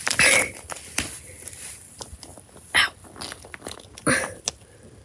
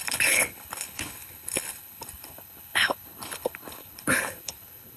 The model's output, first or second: second